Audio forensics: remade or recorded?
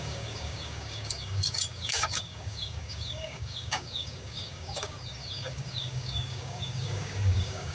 remade